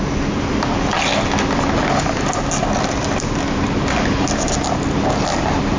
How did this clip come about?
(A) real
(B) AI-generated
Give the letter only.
A